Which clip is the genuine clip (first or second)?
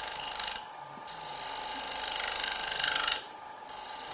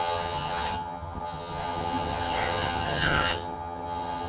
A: first